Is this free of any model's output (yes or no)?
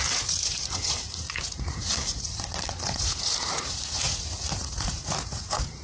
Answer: no